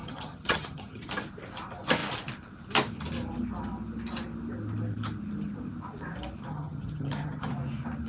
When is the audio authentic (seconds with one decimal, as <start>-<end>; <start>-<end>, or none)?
1.1-6.5; 7.5-8.1